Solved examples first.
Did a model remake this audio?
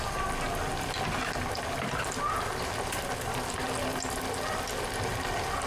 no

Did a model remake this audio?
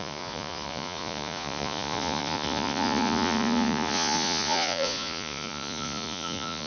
yes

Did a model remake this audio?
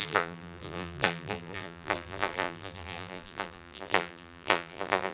yes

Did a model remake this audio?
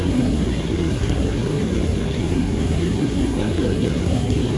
yes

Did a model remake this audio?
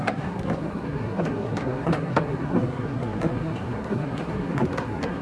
yes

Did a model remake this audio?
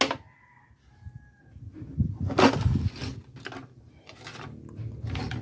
no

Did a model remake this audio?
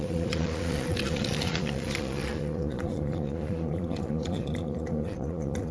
yes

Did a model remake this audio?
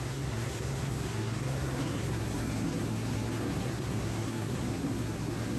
yes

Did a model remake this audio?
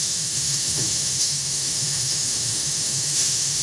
yes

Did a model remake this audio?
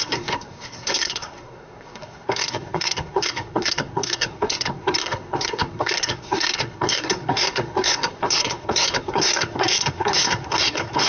yes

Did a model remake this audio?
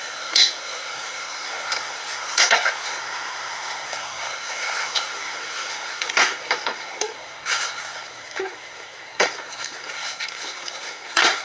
yes